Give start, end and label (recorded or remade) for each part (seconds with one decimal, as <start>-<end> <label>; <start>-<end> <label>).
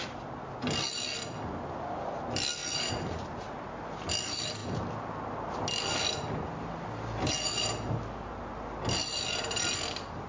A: 0.0-10.3 recorded